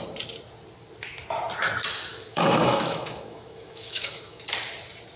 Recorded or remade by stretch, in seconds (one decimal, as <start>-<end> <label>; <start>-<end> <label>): 0.0-2.1 recorded; 2.1-4.4 remade; 4.4-5.2 recorded